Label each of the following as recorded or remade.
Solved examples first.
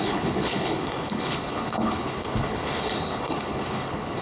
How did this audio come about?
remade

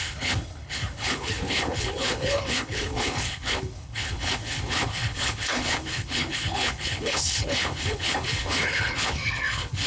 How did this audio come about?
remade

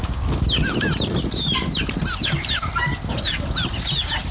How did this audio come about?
recorded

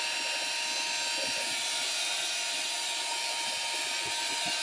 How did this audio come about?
recorded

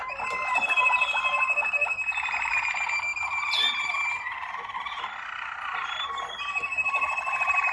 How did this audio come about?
recorded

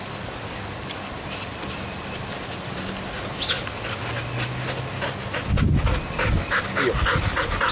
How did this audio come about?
recorded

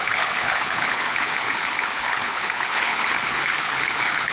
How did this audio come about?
remade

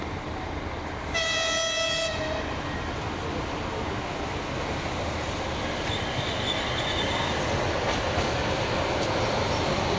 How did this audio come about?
recorded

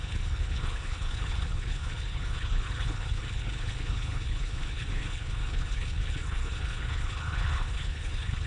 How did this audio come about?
remade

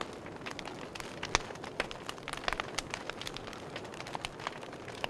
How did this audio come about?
recorded